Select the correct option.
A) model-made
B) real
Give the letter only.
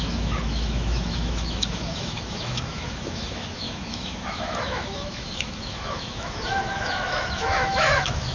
A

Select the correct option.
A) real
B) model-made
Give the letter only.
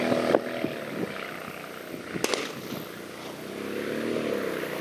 A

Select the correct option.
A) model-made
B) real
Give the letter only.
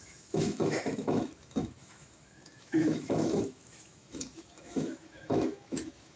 A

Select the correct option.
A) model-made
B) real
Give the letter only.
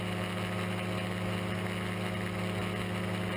B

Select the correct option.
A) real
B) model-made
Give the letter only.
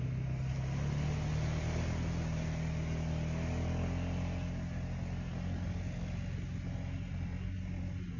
A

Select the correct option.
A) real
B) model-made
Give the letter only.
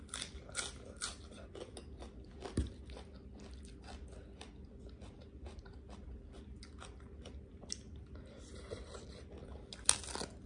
A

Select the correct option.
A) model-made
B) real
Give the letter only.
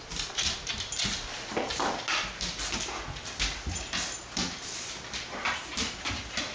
B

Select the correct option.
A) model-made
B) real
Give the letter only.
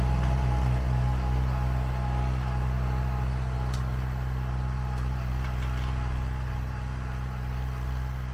B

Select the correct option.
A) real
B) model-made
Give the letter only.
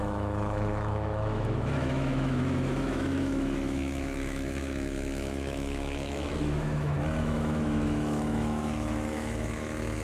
B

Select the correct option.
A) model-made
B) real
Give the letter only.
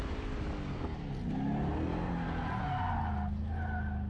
B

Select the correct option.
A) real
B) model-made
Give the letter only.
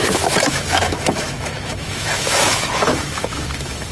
B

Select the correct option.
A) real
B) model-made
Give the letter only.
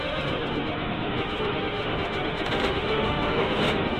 B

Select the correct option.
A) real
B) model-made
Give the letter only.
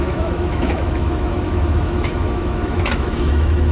B